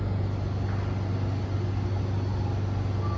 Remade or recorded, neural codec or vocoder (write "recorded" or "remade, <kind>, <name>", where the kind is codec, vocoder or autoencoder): recorded